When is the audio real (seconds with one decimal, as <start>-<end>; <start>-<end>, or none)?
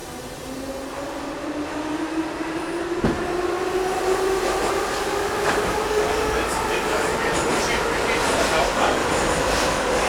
0.0-4.7; 7.1-8.6; 9.0-9.7